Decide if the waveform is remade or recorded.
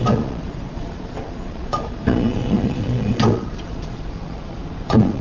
remade